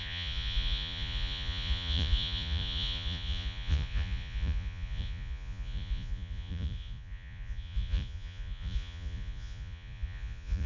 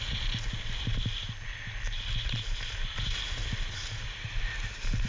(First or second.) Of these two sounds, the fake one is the first